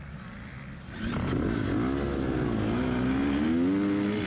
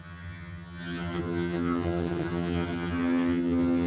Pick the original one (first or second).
first